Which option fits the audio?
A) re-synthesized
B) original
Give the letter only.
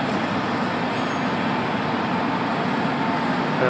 B